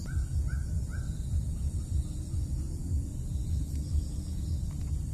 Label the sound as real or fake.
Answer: real